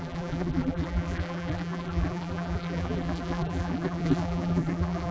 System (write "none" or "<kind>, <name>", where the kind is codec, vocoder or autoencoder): vocoder, BigVGAN v2